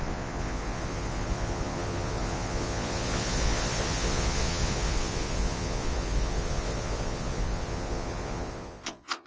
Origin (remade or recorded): remade